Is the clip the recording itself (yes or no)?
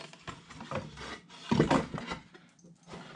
yes